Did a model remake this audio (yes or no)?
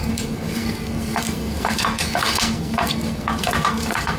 yes